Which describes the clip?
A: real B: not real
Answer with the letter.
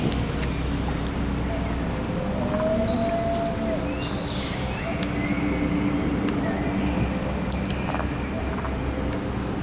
A